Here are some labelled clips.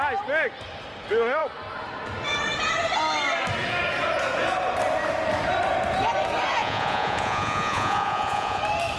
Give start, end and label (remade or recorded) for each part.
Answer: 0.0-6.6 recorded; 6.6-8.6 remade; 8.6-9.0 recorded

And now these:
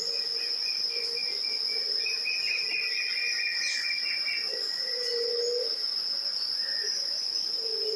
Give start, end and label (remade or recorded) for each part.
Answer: 0.0-5.3 remade; 5.3-6.4 recorded; 6.4-8.0 remade

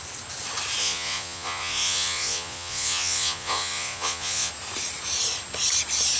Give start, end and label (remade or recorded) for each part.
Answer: 0.0-0.8 recorded; 0.8-4.5 remade; 4.5-6.2 recorded

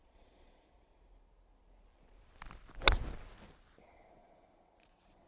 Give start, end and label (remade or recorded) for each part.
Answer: 0.0-0.9 remade; 0.9-4.1 recorded; 4.1-5.3 remade

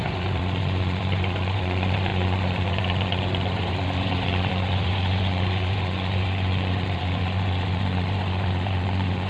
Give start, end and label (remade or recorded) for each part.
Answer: 0.0-9.3 remade

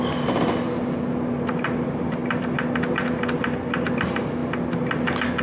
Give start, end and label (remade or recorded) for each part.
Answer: 0.0-5.4 recorded

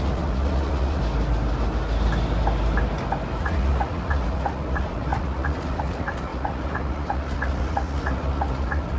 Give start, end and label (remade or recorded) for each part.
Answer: 0.0-1.0 remade; 1.0-3.4 recorded; 3.4-9.0 remade

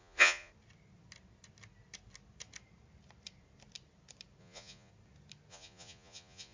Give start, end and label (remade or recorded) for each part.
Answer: 0.0-0.5 remade; 0.5-4.4 recorded; 4.4-4.9 remade; 4.9-5.5 recorded; 5.5-6.5 remade